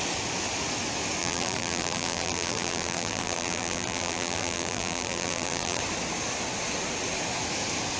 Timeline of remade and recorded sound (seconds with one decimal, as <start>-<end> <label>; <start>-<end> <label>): 0.0-1.2 recorded; 1.2-5.8 remade; 5.8-8.0 recorded